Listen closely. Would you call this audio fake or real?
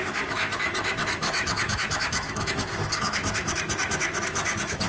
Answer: fake